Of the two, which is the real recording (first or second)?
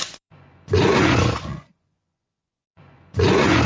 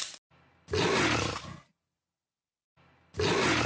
second